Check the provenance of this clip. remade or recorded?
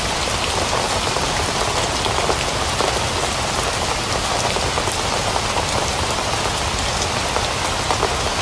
recorded